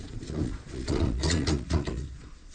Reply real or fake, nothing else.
fake